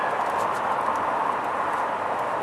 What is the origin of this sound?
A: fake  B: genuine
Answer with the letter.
B